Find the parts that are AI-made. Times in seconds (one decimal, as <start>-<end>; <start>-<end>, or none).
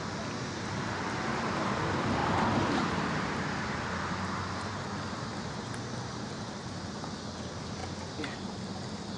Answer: 5.3-6.8